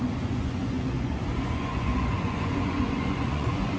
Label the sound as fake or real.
fake